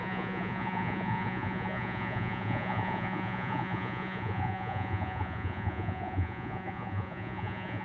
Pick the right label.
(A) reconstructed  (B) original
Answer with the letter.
A